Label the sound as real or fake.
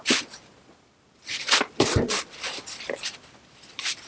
fake